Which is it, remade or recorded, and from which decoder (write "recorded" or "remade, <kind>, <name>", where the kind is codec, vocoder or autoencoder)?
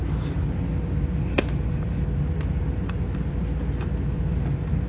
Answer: recorded